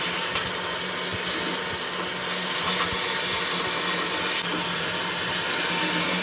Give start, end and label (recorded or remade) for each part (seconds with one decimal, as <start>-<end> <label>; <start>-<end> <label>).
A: 0.0-6.2 recorded